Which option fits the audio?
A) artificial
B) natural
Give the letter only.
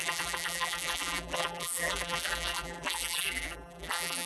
A